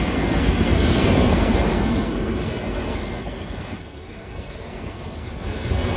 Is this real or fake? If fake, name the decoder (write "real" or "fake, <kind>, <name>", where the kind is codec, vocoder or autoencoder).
fake, codec, SNAC